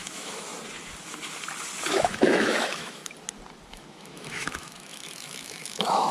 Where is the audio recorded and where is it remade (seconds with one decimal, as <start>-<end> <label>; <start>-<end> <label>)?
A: 0.0-0.5 remade; 0.5-1.9 recorded; 1.9-3.0 remade; 3.0-3.7 recorded; 3.7-6.1 remade